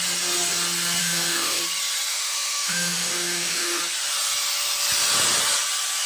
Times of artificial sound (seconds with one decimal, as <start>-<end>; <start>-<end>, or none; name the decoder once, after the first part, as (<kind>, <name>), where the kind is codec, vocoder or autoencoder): 1.0-1.6 (autoencoder, DAC-VAE); 2.1-3.8